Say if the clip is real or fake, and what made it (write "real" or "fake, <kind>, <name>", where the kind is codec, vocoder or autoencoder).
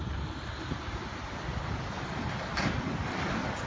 real